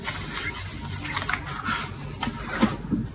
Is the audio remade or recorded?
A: recorded